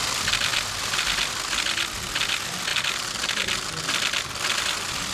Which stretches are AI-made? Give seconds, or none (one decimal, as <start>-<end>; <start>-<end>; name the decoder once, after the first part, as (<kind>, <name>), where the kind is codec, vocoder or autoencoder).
none